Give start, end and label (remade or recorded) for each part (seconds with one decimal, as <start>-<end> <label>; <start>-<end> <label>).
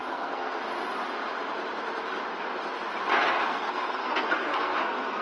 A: 0.0-0.6 remade; 0.6-3.1 recorded; 3.1-5.2 remade